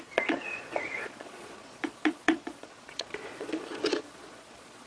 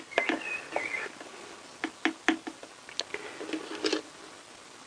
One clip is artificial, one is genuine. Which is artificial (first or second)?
first